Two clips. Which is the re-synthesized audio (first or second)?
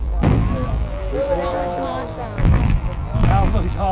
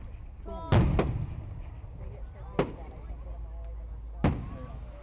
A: first